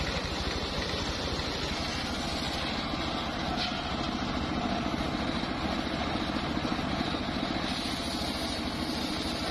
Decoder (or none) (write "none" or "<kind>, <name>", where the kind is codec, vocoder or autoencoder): none